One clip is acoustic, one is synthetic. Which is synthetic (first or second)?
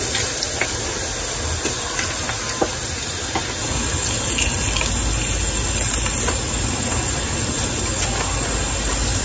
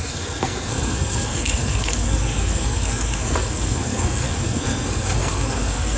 second